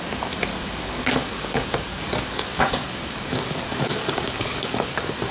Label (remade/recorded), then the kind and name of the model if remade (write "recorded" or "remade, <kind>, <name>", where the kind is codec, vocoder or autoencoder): remade, codec, DAC